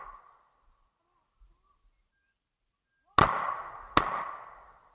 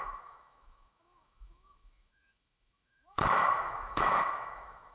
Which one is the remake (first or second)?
second